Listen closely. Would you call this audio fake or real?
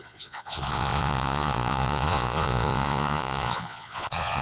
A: fake